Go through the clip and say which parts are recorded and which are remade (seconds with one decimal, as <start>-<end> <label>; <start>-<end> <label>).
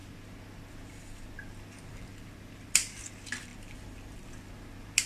0.0-5.1 recorded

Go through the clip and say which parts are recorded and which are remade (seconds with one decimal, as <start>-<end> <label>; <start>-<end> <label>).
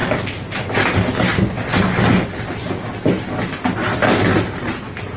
0.0-5.2 recorded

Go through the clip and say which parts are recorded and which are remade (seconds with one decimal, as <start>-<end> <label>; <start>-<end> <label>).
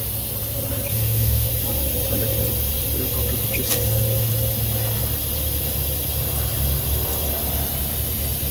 0.0-0.9 recorded; 0.9-1.5 remade; 1.5-8.5 recorded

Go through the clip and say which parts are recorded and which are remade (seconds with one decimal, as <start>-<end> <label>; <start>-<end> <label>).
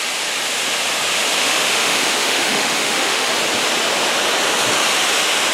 0.0-1.4 recorded; 1.4-3.3 remade; 3.3-5.5 recorded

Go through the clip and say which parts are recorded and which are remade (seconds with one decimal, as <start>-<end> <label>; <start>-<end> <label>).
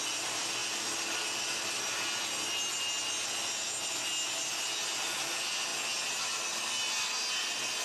0.0-7.8 recorded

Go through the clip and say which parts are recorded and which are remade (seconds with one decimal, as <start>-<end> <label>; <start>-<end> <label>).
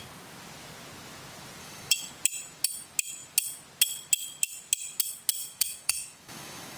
0.0-1.6 recorded; 1.6-2.1 remade; 2.1-5.4 recorded; 5.4-6.8 remade